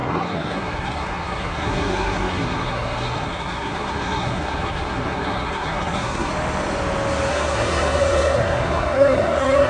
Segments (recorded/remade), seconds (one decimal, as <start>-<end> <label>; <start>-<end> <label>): 0.0-6.3 remade; 6.3-7.3 recorded; 7.3-9.7 remade